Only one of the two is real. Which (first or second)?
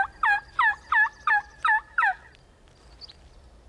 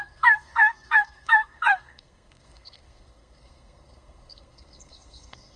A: first